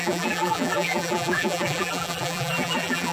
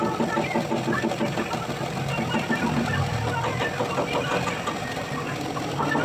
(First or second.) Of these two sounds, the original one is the second